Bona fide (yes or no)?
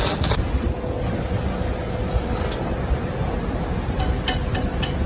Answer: yes